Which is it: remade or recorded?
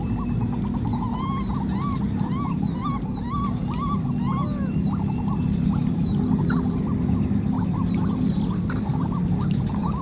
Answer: recorded